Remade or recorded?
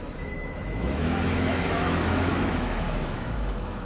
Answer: remade